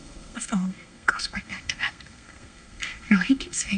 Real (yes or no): no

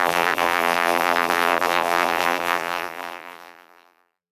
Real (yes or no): no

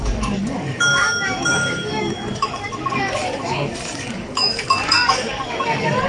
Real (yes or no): no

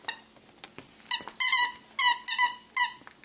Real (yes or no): yes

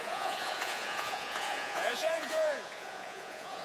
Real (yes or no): no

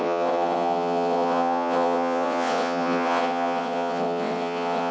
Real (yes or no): no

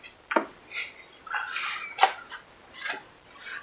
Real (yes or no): yes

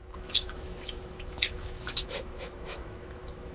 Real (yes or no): no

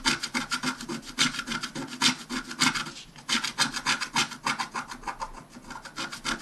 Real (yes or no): yes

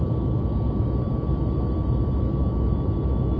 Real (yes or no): no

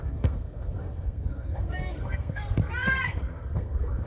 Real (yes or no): no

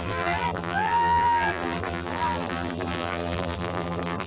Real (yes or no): no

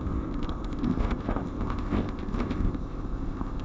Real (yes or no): no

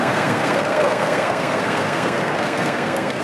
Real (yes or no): no